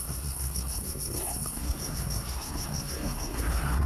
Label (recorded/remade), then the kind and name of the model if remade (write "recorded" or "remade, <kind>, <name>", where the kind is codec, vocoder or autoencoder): remade, codec, SNAC